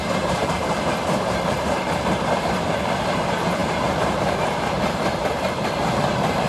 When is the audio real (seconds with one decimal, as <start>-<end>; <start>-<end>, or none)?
none